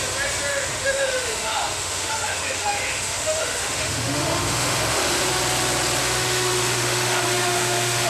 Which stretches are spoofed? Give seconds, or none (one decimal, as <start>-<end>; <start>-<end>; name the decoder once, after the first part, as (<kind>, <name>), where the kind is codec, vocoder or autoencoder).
0.5-5.2 (autoencoder, DAC-VAE); 6.0-8.1